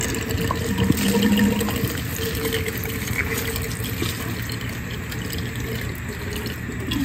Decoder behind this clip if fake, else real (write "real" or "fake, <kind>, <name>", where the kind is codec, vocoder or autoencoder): real